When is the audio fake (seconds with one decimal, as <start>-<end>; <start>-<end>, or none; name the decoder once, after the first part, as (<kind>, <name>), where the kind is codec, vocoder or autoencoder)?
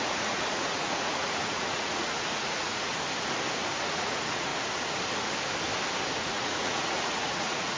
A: 0.0-2.9 (vocoder, Vocos); 3.9-4.5; 6.2-7.8